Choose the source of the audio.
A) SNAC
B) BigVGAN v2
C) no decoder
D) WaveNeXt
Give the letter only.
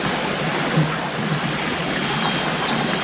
C